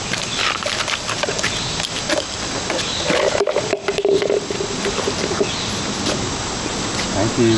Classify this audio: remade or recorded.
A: recorded